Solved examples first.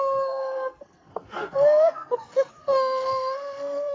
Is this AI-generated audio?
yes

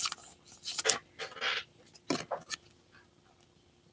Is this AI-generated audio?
no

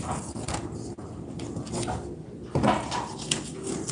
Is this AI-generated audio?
no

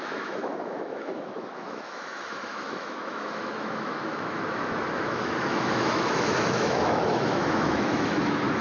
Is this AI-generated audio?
yes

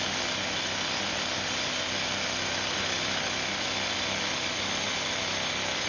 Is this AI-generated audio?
no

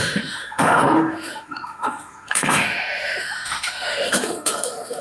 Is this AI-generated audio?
yes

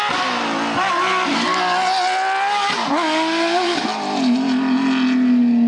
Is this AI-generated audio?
no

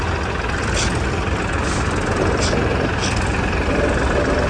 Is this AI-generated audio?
no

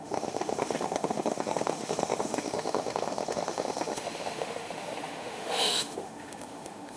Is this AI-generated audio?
yes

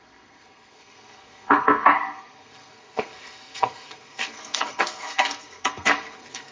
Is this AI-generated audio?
yes